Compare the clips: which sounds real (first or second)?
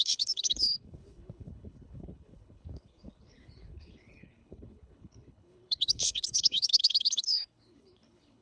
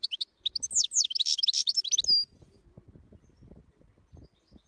second